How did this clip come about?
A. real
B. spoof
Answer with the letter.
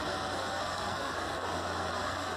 B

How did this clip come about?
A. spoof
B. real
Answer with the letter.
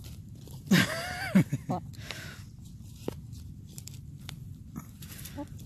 A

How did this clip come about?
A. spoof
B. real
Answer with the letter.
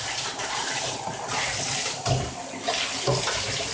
B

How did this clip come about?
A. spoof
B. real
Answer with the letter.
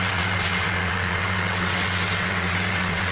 A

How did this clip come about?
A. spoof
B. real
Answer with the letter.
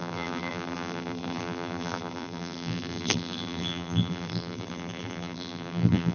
A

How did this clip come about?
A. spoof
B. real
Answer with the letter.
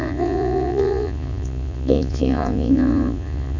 A